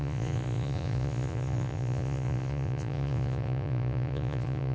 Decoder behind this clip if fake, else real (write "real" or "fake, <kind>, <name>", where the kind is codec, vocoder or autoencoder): fake, vocoder, Vocos